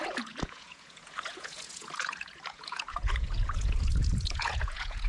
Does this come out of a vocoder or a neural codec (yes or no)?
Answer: yes